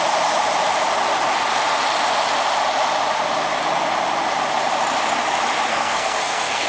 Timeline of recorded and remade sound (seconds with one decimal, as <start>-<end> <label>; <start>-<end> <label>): 0.0-5.7 recorded; 5.7-6.7 remade

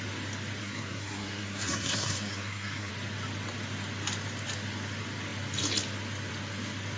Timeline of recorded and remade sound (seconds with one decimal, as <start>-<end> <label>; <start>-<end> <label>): 0.0-0.6 recorded; 0.6-2.9 remade; 2.9-7.0 recorded

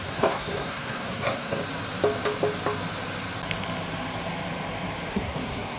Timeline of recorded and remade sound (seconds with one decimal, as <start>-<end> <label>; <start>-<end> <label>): 0.0-1.6 remade; 1.6-5.1 recorded; 5.1-5.8 remade

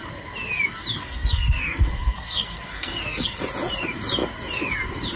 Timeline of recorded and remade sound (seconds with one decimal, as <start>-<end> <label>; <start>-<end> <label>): 0.0-1.0 recorded; 1.0-3.4 remade; 3.4-5.2 recorded

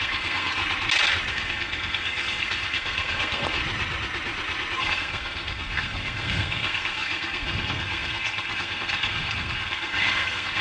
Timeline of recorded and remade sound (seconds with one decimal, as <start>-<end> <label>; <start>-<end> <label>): 0.0-0.6 remade; 0.6-1.3 recorded; 1.3-3.6 remade; 3.6-4.8 recorded; 4.8-10.6 remade

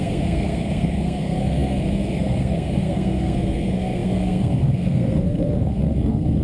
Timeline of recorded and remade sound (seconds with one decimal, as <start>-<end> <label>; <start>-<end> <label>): 0.0-6.4 remade